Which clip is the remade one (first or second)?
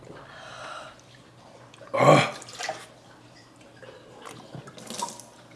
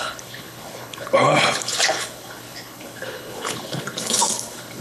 second